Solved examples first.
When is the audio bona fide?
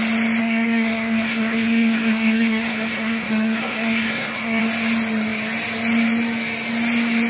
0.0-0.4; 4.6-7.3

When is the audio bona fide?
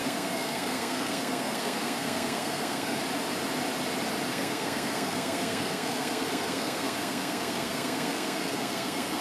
3.0-4.3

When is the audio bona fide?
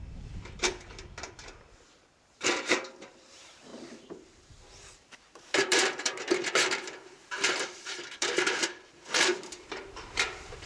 3.7-4.7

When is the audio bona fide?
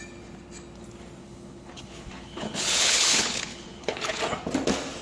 0.0-1.2; 4.2-5.0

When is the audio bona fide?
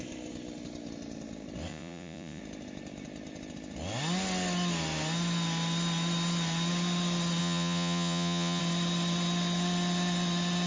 0.0-1.7; 2.4-7.4; 8.6-10.7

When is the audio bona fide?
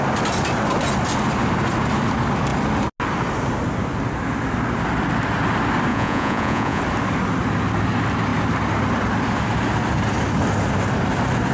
0.0-5.9; 6.8-11.5